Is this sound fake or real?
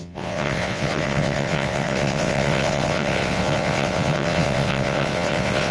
fake